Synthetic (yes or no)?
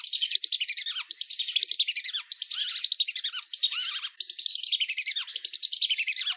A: no